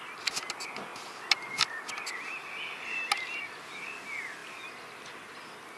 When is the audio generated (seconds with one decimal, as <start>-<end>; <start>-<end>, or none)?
none